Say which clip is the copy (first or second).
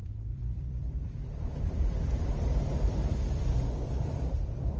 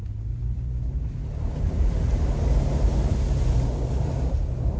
first